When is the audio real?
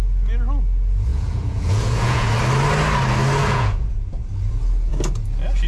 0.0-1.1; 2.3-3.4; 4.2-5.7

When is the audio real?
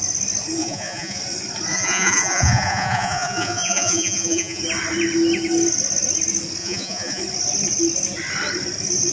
0.0-0.6; 1.2-1.7; 4.6-6.6; 7.2-9.1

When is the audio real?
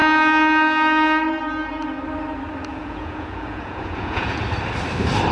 0.0-2.7; 4.4-5.3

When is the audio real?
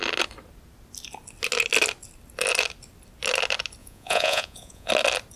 0.0-3.8; 4.9-5.4